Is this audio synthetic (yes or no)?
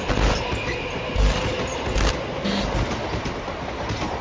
no